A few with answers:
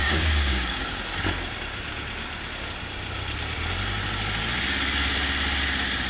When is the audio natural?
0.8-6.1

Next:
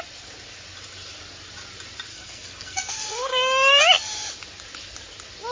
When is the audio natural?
0.0-2.1; 3.8-5.5

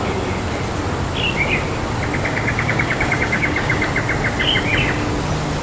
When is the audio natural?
0.0-2.3; 3.8-5.6